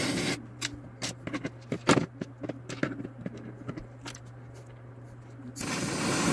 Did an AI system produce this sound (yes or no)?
no